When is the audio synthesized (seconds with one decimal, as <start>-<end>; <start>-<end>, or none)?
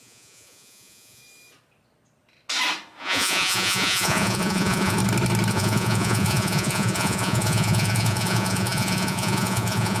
0.0-1.2; 3.0-5.0; 5.5-10.0